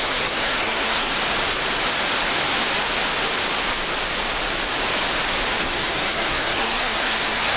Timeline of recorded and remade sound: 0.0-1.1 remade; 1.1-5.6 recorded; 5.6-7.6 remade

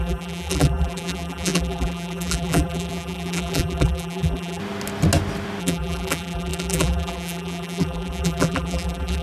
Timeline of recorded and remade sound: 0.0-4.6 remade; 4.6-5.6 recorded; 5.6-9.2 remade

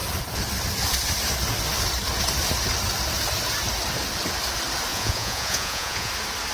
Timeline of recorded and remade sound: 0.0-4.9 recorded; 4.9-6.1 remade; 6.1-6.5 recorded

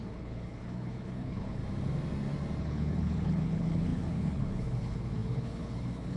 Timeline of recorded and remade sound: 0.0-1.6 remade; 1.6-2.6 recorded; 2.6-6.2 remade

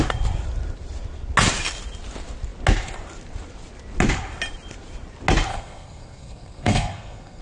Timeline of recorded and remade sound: 0.0-5.5 recorded; 5.5-7.4 remade